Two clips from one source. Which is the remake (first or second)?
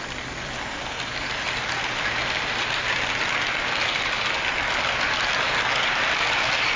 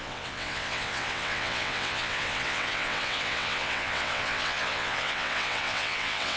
second